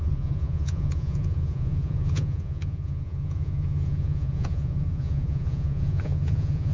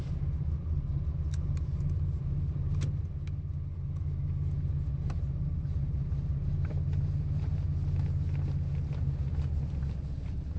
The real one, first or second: second